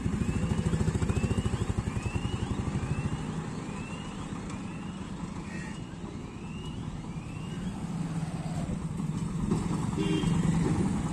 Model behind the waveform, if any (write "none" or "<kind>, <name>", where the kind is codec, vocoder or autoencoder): none